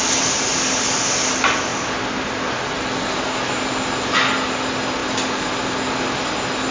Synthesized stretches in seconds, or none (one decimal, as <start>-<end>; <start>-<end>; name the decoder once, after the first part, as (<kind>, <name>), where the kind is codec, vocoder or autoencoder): none